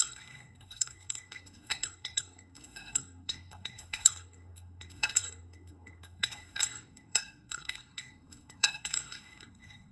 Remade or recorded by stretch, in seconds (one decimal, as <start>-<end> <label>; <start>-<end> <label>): 0.0-9.9 remade